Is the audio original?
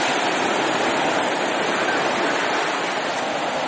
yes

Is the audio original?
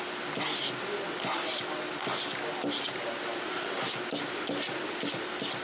yes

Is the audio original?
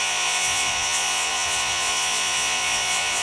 no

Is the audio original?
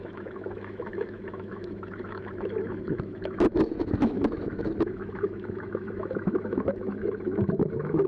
no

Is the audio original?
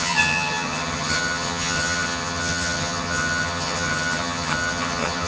no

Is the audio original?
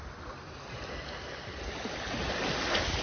yes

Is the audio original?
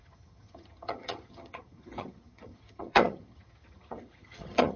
no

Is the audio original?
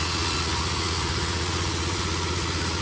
no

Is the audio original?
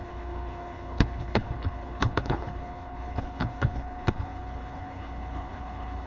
no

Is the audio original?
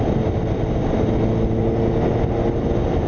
yes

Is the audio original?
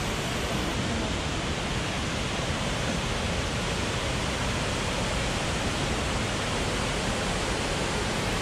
yes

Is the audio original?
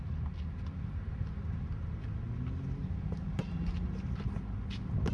yes